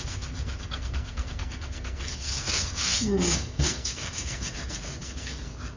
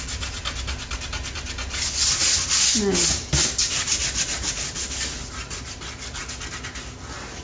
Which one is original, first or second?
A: second